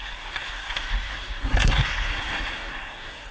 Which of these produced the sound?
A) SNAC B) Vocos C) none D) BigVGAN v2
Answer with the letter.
A